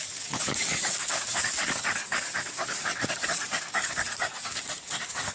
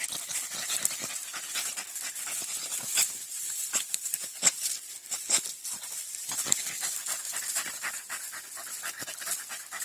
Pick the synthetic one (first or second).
first